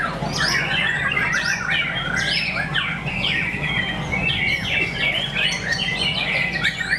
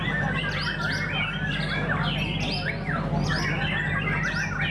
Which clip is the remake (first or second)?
first